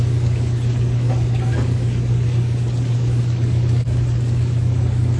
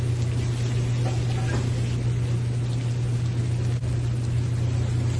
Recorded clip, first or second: second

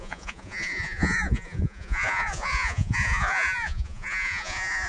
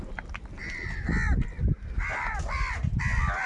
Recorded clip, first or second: second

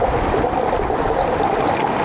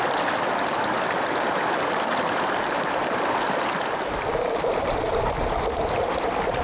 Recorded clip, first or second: first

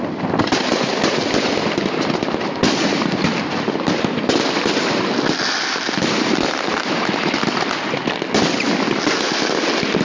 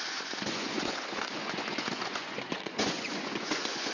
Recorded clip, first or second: first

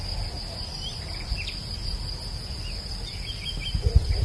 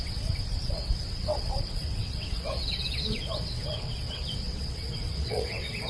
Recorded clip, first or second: first